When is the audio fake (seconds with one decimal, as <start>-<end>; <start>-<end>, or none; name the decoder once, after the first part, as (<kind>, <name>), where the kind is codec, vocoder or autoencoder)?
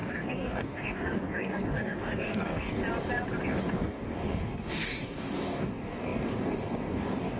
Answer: 0.0-2.8 (codec, DAC); 3.7-7.4